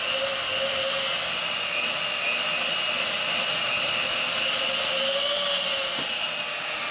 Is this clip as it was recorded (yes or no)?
yes